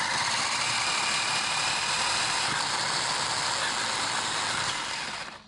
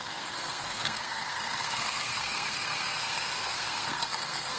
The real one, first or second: first